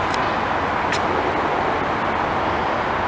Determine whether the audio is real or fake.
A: real